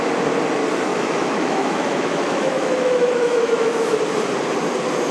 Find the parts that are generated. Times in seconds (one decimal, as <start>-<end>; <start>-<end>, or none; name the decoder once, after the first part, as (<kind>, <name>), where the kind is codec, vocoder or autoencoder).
0.9-4.0 (autoencoder, DAC-VAE)